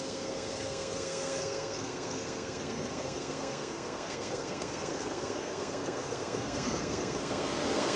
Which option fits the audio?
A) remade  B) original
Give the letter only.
A